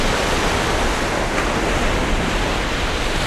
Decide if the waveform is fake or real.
real